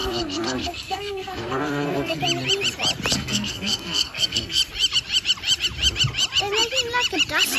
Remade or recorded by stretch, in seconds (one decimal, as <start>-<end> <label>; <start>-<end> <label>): 0.0-2.2 remade; 2.2-3.1 recorded; 3.1-4.6 remade; 4.6-7.6 recorded